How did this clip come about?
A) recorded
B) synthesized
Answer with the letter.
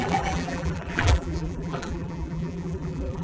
B